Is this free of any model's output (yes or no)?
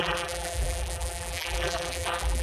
no